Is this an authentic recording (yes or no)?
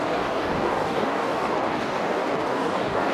no